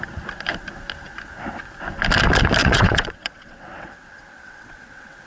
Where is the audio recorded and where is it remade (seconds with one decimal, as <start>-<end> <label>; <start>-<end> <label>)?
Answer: 0.0-2.6 recorded; 2.6-5.3 remade